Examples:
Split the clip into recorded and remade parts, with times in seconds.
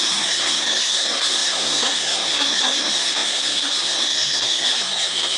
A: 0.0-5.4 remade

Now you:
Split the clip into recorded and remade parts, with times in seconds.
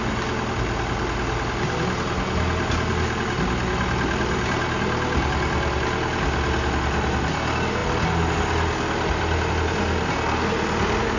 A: 0.0-11.2 recorded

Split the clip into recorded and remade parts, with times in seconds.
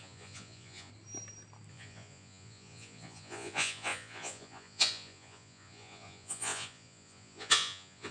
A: 0.0-0.9 remade; 0.9-1.7 recorded; 1.7-8.1 remade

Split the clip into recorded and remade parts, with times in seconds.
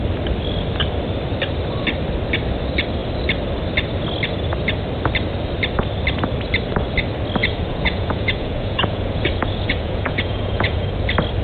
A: 0.0-7.4 recorded; 7.4-10.8 remade; 10.8-11.4 recorded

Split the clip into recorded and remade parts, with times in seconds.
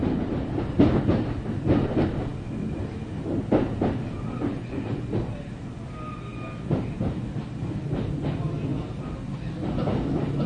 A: 0.0-4.5 recorded; 4.5-5.1 remade; 5.1-10.5 recorded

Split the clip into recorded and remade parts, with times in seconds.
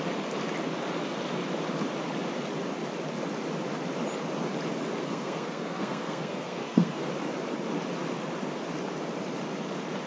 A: 0.0-5.0 recorded; 5.0-7.0 remade; 7.0-10.1 recorded